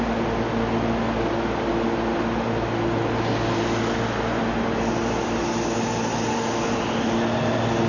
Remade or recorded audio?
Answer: recorded